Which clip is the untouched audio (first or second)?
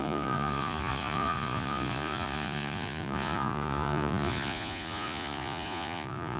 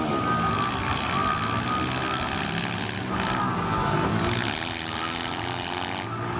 second